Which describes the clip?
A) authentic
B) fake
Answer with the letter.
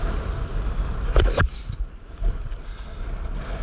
A